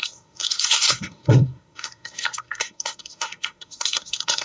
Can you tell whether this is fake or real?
fake